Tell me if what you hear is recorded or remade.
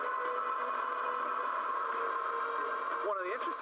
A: recorded